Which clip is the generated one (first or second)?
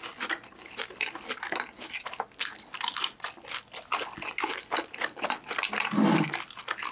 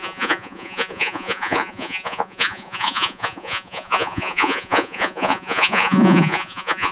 second